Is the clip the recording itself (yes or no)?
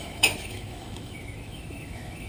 no